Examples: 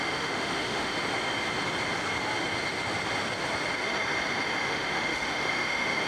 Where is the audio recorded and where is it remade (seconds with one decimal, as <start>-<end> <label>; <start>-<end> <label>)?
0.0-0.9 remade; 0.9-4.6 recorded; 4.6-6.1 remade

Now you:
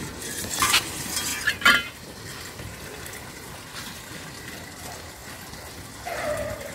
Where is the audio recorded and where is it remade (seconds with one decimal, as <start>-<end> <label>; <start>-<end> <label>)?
0.0-6.7 recorded

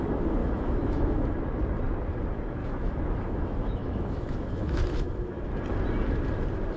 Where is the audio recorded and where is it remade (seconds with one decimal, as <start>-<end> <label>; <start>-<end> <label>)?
0.0-0.4 recorded; 0.4-1.2 remade; 1.2-2.6 recorded; 2.6-5.5 remade; 5.5-6.8 recorded

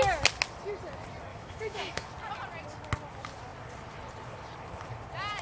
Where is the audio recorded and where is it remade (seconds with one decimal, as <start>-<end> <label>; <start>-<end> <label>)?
0.0-1.3 recorded; 1.3-2.1 remade; 2.1-5.4 recorded